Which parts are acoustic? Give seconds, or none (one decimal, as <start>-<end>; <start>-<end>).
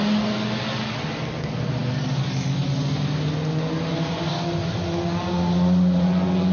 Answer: 0.0-6.5